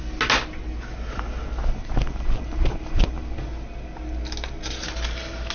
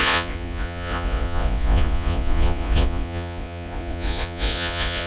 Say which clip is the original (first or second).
first